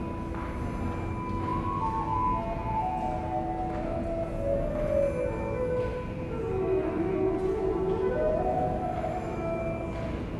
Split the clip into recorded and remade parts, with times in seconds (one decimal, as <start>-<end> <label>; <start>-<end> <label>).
0.0-6.5 recorded; 6.5-7.1 remade; 7.1-8.9 recorded; 8.9-9.6 remade; 9.6-10.4 recorded